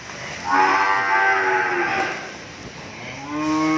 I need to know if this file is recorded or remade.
recorded